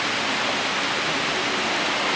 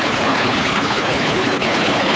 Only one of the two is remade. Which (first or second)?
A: second